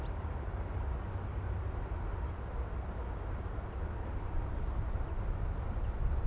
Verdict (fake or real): real